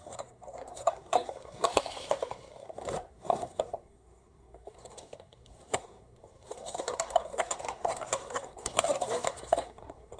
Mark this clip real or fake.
fake